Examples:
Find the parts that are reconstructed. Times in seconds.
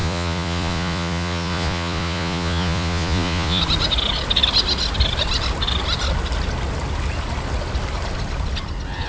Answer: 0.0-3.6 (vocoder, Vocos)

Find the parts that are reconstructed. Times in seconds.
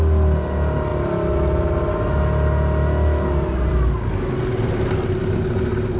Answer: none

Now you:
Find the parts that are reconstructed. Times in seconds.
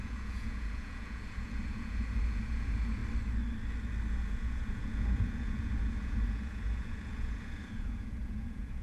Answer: 0.0-3.0 (vocoder, Vocos); 4.1-8.8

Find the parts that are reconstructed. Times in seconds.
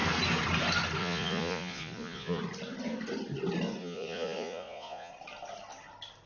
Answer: 1.0-2.4 (vocoder, Vocos); 3.8-5.1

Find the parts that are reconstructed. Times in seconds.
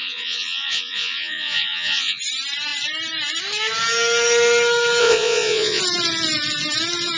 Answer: 0.0-2.2 (vocoder, Vocos); 5.0-5.8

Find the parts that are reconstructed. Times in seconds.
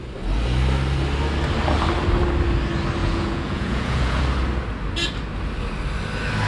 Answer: 3.0-4.2 (vocoder, Vocos)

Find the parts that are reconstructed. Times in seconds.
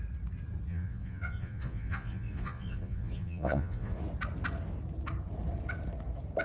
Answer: 0.7-4.0 (vocoder, Vocos)